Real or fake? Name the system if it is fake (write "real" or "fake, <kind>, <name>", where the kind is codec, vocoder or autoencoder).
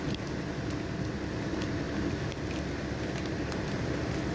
real